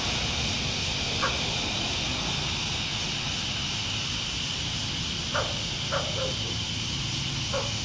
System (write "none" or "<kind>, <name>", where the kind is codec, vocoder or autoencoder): none